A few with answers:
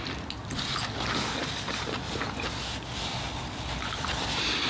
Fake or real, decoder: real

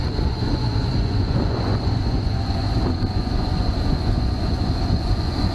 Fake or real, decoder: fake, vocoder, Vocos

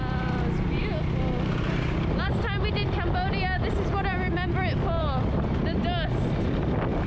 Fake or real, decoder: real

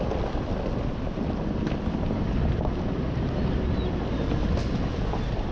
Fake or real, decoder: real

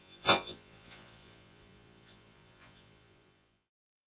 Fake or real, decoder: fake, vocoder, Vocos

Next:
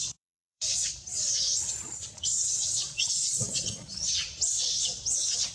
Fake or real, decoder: fake, vocoder, Vocos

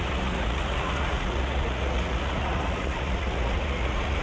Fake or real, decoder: fake, vocoder, Vocos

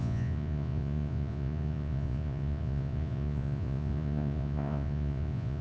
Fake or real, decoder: fake, vocoder, Vocos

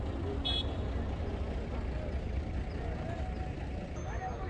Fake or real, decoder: real